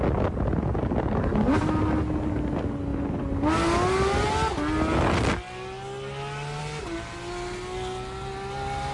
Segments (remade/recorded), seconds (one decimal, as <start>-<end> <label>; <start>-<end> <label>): 0.0-8.9 recorded